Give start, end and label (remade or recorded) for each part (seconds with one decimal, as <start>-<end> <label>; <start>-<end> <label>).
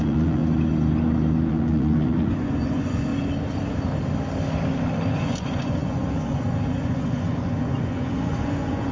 0.0-0.4 remade; 0.4-1.5 recorded; 1.5-3.1 remade; 3.1-5.1 recorded; 5.1-8.9 remade